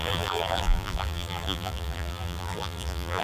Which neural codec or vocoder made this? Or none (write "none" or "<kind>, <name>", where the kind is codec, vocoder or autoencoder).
vocoder, BigVGAN v2